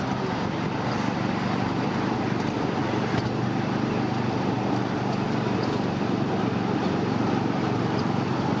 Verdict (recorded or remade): recorded